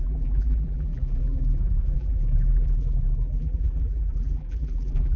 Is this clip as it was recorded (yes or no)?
no